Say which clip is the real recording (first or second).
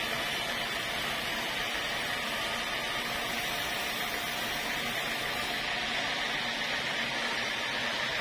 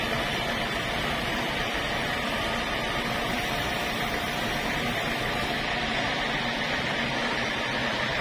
first